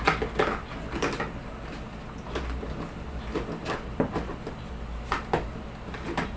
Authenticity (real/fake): real